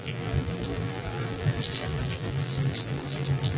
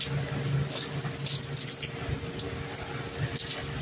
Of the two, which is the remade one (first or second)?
first